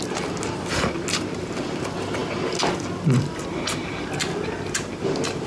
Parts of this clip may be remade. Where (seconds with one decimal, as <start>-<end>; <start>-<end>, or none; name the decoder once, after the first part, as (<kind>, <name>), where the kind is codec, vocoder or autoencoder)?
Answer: none

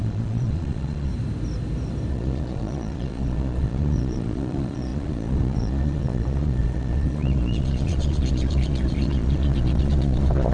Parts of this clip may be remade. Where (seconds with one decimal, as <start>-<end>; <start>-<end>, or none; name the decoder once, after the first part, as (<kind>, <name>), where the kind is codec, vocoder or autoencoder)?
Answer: 0.0-1.1 (vocoder, Vocos); 2.1-10.5

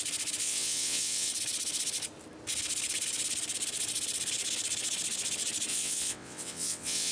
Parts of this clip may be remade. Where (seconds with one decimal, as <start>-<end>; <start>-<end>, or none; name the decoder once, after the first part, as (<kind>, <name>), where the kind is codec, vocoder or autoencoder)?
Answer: 0.4-1.3 (vocoder, WaveNeXt); 5.7-7.1

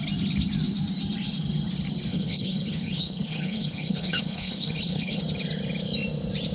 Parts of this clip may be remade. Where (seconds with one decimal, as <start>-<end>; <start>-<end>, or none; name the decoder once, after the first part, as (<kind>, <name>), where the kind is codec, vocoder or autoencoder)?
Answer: 2.1-5.2 (codec, HILCodec)

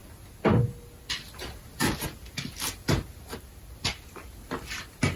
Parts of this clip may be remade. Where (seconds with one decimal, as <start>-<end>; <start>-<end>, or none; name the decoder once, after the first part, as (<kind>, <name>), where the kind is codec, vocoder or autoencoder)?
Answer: 1.1-5.2 (vocoder, BigVGAN v2)

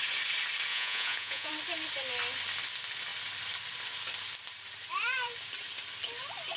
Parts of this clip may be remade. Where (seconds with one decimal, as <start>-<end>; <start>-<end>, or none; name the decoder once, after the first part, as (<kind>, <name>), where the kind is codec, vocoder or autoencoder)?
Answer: 0.7-1.5 (vocoder, Vocos)

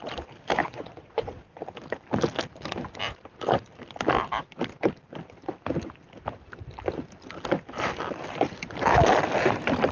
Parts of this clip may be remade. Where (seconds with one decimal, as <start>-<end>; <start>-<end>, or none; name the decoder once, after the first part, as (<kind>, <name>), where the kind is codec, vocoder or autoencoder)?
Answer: 0.6-1.6 (vocoder, Vocos)

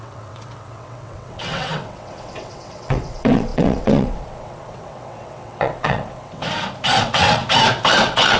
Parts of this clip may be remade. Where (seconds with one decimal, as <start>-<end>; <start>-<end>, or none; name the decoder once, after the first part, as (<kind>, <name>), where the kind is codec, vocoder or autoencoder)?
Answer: 0.0-6.4 (vocoder, WaveNeXt); 7.0-7.4; 7.9-8.4